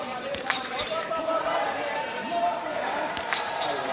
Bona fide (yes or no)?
no